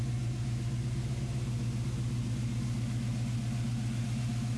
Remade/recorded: recorded